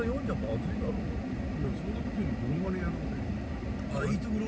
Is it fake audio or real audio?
real